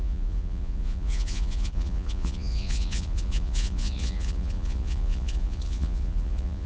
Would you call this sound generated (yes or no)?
yes